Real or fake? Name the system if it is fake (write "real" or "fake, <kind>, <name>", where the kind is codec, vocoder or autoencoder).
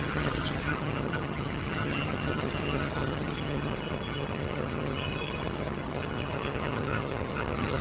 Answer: fake, vocoder, HiFi-GAN